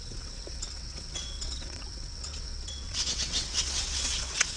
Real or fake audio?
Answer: fake